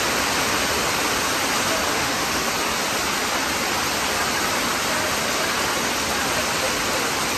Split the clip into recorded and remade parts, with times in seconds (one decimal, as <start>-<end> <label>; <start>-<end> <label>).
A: 0.0-1.9 recorded; 1.9-2.5 remade; 2.5-7.4 recorded

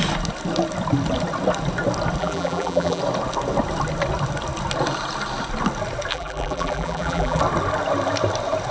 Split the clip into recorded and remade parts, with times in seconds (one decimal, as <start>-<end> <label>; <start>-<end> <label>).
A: 0.0-2.2 recorded; 2.2-3.0 remade; 3.0-6.1 recorded; 6.1-7.4 remade; 7.4-8.7 recorded

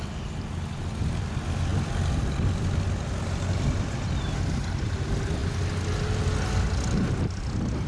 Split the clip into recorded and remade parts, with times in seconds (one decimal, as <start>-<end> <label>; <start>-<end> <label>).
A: 0.0-7.9 recorded

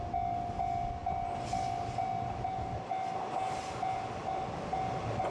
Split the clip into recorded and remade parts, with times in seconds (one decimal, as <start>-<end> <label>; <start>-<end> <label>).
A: 0.0-5.3 recorded